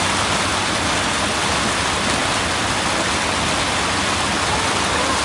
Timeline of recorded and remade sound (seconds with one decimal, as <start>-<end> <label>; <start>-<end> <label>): 0.0-5.2 recorded